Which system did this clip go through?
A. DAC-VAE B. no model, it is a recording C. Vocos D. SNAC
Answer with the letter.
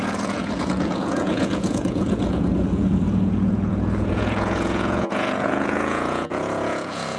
C